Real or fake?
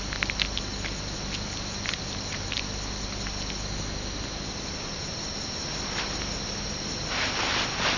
real